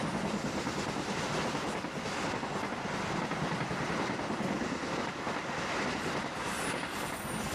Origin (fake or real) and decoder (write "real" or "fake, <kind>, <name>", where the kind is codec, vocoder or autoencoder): real